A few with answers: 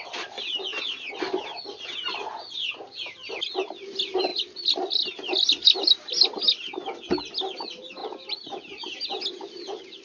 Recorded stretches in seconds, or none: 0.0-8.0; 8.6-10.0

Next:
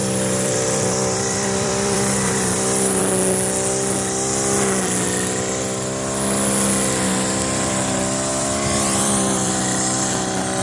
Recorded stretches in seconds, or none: 3.0-8.3; 9.5-10.6

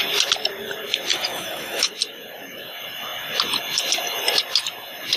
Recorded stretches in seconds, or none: 0.0-1.1; 1.9-5.2

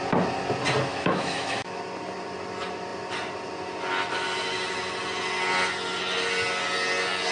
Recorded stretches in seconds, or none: 0.0-0.9; 1.8-7.3

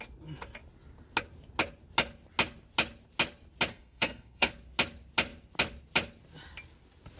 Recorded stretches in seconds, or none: 0.0-3.7; 4.5-7.2

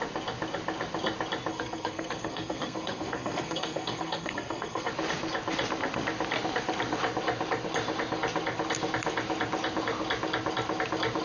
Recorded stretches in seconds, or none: 0.0-1.5; 4.9-11.2

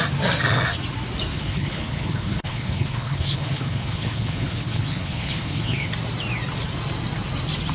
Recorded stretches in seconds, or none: 0.0-1.3; 5.9-7.7

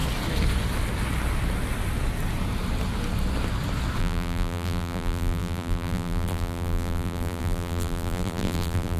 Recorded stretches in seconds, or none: 0.0-4.0